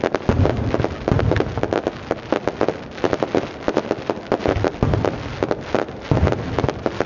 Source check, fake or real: real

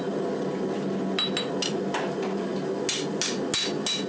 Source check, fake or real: real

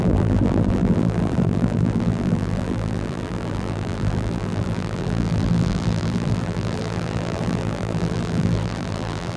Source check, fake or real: fake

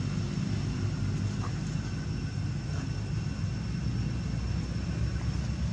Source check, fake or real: real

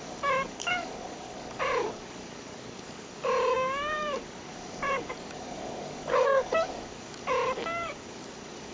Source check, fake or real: fake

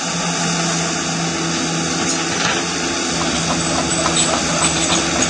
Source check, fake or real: real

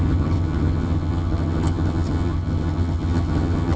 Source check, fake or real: fake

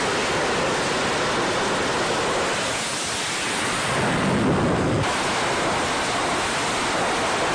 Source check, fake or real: real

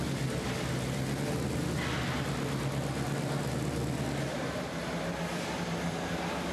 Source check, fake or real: real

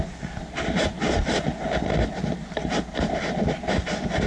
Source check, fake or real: real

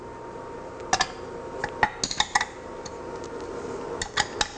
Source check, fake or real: real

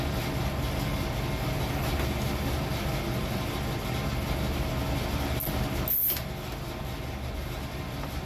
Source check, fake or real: real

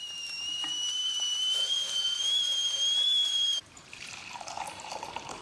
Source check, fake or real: fake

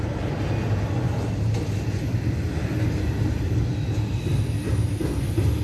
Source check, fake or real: real